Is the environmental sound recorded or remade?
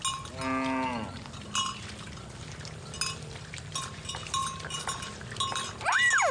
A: recorded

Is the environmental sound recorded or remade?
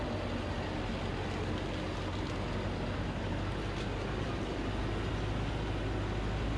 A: recorded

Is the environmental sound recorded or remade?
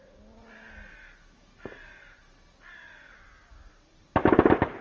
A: recorded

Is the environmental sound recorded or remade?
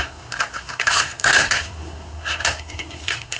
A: remade